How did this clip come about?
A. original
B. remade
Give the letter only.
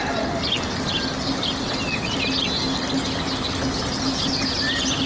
A